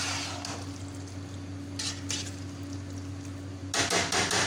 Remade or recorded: recorded